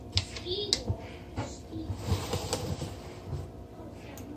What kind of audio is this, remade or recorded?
recorded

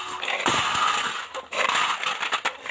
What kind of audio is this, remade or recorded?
recorded